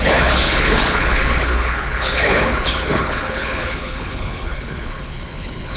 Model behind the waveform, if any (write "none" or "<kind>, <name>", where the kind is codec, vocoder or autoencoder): codec, HILCodec